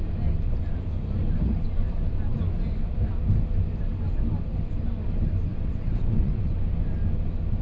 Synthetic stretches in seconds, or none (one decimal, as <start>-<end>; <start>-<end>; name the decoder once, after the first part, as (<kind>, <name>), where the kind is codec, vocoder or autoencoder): 5.5-6.5 (vocoder, WaveNeXt)